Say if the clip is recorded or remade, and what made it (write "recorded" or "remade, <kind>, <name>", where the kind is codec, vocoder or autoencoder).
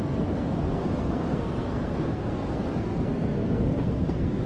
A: remade, codec, SNAC